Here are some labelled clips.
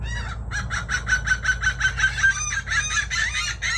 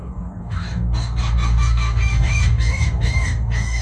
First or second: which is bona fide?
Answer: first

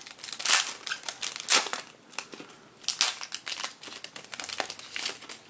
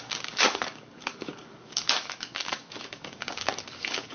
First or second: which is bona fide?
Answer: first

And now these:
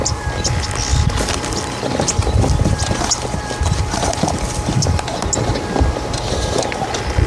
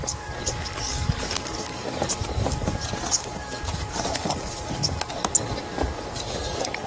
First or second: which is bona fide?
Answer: first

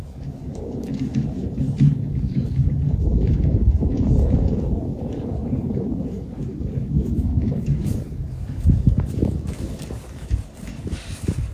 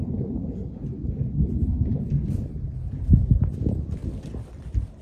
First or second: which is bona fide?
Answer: second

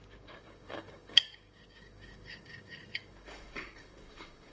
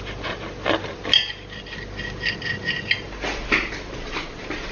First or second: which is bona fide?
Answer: second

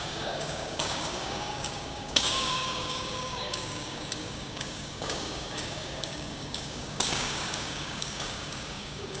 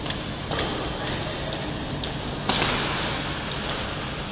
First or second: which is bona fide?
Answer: second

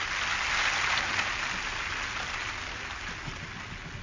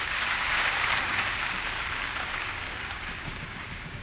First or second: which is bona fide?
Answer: first